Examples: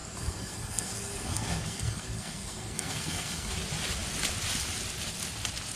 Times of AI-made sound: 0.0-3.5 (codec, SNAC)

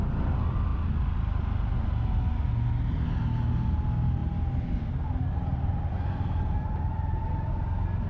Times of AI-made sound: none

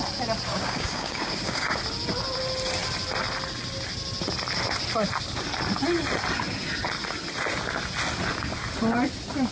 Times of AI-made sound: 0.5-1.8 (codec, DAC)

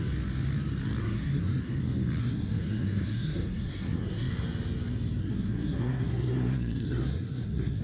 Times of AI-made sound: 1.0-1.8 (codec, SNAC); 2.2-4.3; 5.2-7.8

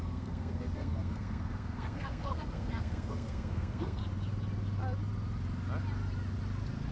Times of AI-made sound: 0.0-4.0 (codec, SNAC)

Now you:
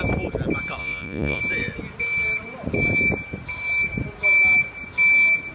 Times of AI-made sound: 0.8-1.4 (vocoder, Vocos)

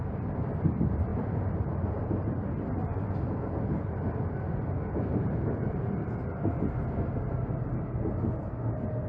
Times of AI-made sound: 5.1-6.2 (vocoder, BigVGAN v2)